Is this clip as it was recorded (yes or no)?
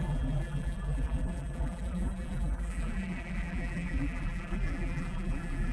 no